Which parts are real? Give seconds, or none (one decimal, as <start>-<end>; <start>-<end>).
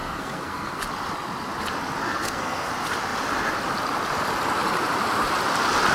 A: 0.8-2.0; 2.7-5.9